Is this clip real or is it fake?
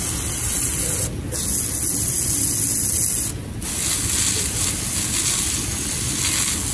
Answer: real